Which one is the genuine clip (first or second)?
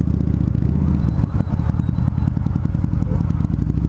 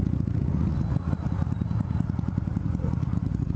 first